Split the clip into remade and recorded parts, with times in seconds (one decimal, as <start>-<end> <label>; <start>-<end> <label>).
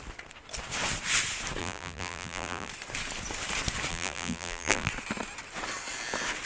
0.0-1.6 recorded; 1.6-2.7 remade; 2.7-3.9 recorded; 3.9-4.9 remade; 4.9-6.5 recorded